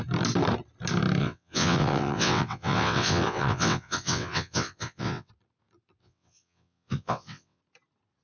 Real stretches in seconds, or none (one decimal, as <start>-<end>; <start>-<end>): 0.0-1.2; 5.3-6.0; 7.6-8.2